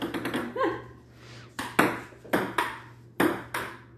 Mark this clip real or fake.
real